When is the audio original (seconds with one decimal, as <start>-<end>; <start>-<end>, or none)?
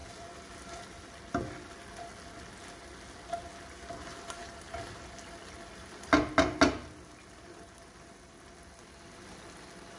0.0-10.0